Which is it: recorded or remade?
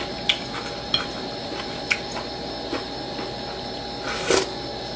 recorded